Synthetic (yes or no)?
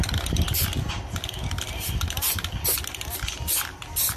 no